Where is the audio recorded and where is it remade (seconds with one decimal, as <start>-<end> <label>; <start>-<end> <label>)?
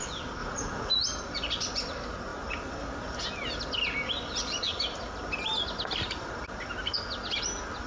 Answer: 0.0-0.4 recorded; 0.4-0.9 remade; 0.9-7.9 recorded